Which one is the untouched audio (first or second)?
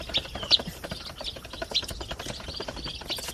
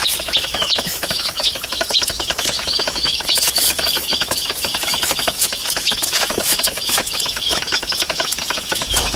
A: first